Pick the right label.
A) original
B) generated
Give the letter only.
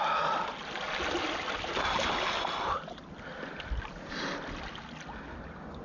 A